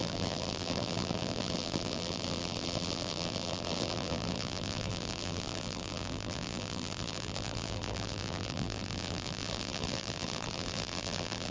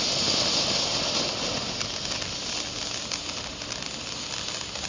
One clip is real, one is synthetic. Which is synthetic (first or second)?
first